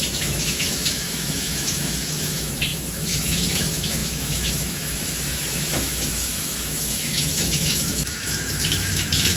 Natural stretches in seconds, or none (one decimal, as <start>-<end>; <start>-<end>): none